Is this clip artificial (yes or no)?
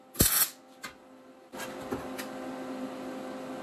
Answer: no